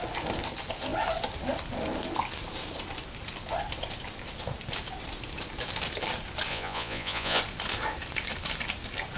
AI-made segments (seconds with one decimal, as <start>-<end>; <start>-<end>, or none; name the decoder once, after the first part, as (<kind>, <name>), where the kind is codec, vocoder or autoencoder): 6.5-7.4 (vocoder, Vocos)